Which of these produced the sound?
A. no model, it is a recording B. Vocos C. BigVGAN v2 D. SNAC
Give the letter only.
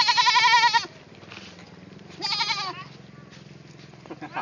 A